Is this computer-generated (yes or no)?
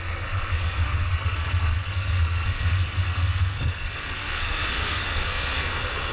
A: yes